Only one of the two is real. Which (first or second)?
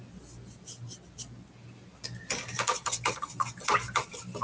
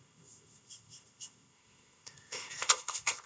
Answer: first